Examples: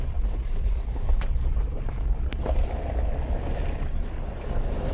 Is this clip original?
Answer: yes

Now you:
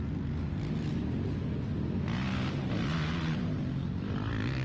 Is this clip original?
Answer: yes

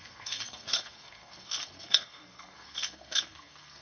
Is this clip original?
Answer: no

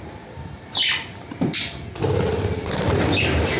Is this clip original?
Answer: yes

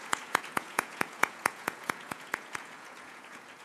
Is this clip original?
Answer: no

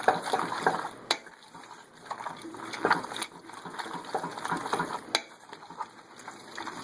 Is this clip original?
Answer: yes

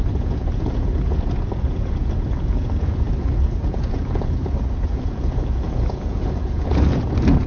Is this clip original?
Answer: no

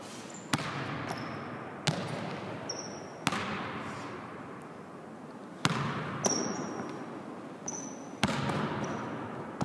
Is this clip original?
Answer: yes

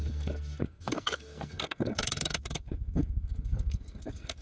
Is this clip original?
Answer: no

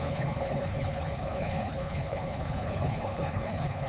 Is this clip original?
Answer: no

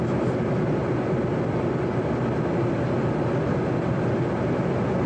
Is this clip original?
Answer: yes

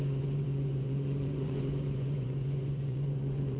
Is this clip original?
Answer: no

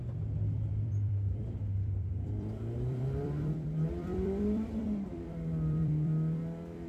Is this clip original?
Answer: no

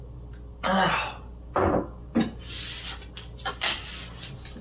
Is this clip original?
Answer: yes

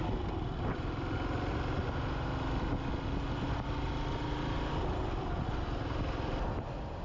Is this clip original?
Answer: yes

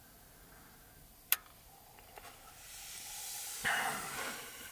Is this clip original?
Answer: yes